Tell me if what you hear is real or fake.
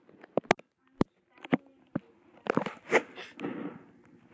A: real